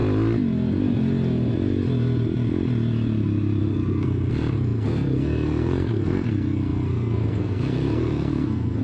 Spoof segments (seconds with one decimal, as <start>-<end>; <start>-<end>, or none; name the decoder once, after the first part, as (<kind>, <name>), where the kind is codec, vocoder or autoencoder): 3.6-8.8 (codec, SNAC)